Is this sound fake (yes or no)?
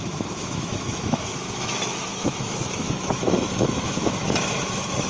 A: yes